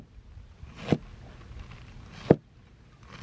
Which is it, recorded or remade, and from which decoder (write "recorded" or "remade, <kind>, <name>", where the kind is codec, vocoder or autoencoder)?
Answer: recorded